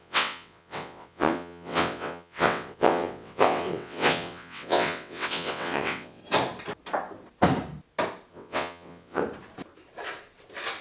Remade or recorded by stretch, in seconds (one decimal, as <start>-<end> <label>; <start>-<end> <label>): 0.0-6.2 remade; 6.2-8.3 recorded; 8.3-9.2 remade; 9.2-10.8 recorded

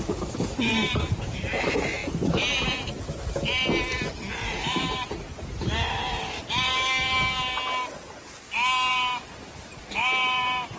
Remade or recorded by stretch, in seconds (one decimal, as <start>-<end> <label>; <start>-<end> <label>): 0.0-2.0 remade; 2.0-4.3 recorded; 4.3-6.7 remade; 6.7-8.9 recorded; 8.9-10.8 remade

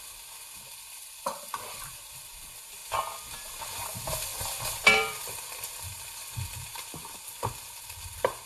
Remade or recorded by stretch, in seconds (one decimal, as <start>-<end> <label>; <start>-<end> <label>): 0.0-2.8 remade; 2.8-3.4 recorded; 3.4-8.5 remade

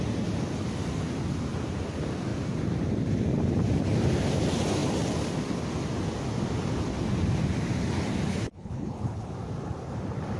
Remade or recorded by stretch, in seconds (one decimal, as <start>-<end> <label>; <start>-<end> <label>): 0.0-8.3 recorded; 8.3-9.3 remade; 9.3-10.4 recorded

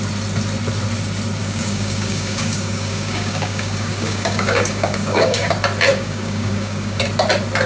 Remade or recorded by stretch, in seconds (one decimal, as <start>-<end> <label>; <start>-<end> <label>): 0.0-1.4 recorded; 1.4-5.5 remade; 5.5-5.9 recorded; 5.9-7.0 remade; 7.0-7.7 recorded